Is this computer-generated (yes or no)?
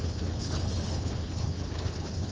yes